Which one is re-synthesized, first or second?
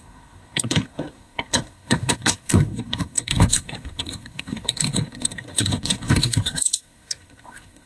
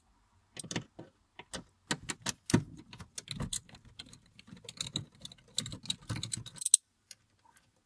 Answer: first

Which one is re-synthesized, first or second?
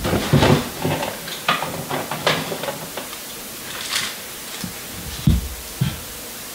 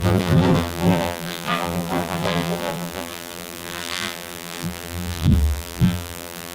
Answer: second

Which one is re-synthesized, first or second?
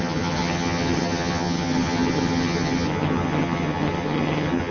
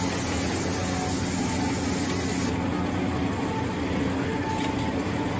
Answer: first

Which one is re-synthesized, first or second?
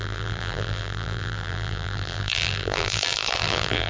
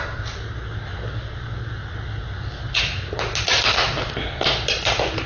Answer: first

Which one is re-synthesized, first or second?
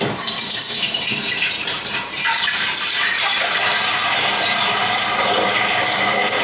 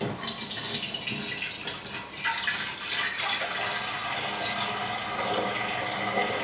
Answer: first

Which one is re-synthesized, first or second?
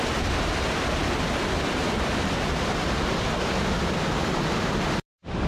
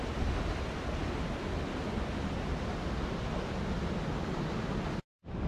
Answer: first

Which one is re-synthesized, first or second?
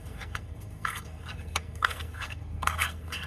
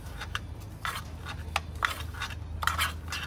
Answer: first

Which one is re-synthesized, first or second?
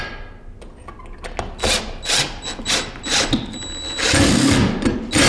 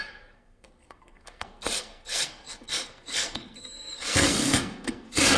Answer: second